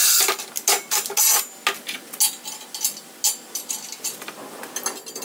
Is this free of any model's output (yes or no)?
yes